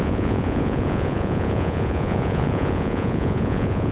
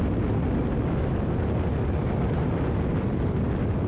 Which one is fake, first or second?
first